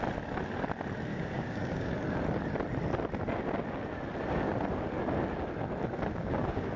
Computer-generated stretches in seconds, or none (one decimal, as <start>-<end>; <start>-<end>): 1.1-1.9; 6.1-6.8